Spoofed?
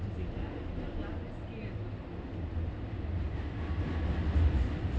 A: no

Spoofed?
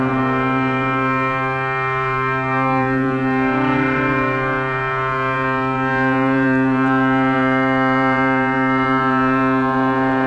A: yes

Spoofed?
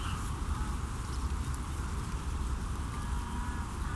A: yes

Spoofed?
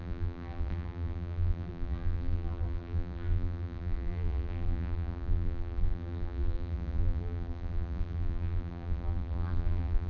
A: yes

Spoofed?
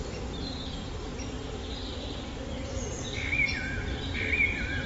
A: yes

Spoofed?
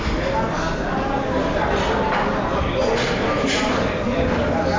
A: no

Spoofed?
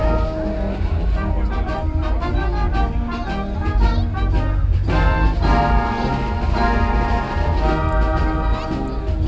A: no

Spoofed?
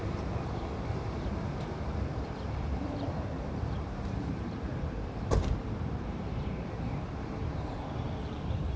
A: yes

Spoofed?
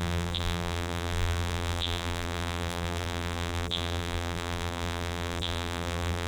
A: yes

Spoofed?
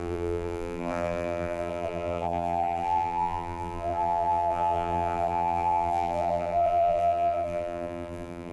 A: yes